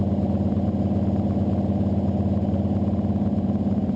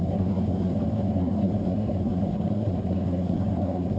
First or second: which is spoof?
second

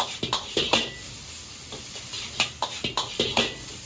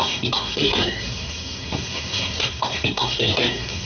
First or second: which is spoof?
second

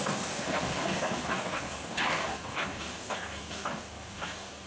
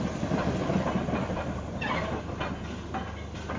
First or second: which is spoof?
first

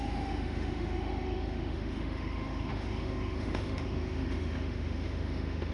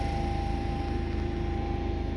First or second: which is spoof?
first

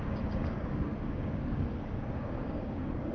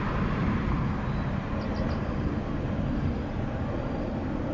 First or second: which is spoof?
first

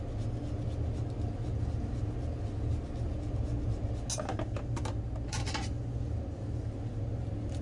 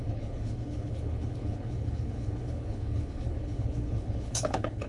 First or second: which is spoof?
second